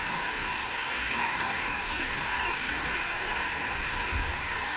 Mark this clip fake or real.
fake